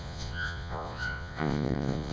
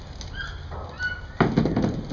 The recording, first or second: second